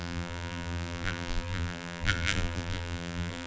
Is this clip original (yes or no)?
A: no